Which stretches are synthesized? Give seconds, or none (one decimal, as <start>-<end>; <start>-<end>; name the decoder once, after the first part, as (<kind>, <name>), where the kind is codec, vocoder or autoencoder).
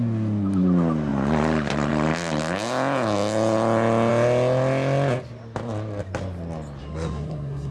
6.8-7.7 (codec, SNAC)